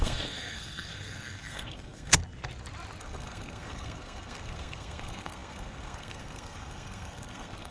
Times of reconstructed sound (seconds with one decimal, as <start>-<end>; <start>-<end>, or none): 0.0-2.2; 3.0-7.7